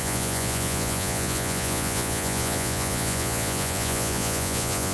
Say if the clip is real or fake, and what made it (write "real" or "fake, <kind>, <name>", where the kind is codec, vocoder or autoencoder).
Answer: fake, vocoder, Vocos